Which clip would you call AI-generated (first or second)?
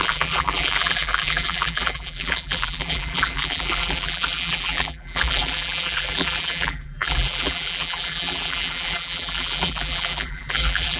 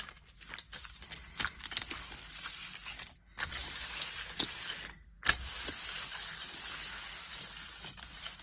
first